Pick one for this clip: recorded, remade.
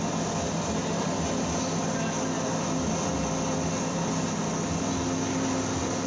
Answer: recorded